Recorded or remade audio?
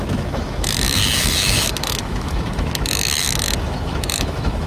remade